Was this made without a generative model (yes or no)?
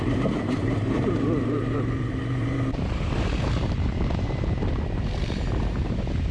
no